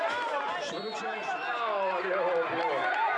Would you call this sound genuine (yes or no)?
yes